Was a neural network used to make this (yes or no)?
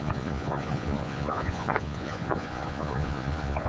yes